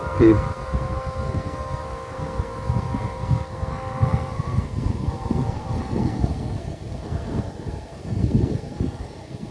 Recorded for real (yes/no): no